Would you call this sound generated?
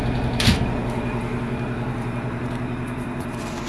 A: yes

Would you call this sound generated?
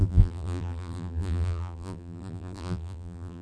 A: yes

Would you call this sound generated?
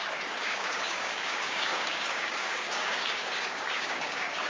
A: yes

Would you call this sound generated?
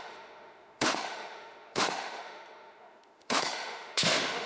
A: yes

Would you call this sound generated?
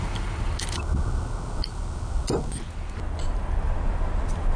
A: no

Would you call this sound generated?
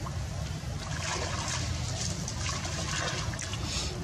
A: no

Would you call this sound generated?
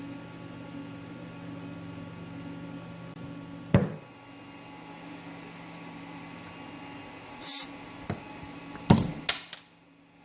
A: no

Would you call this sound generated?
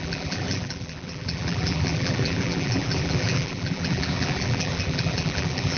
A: yes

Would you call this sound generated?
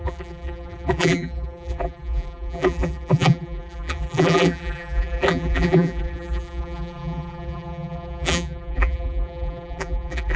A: yes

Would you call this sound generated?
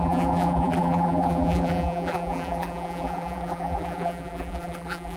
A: yes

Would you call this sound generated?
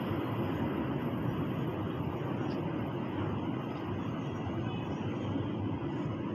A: no